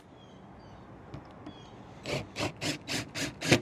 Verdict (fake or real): real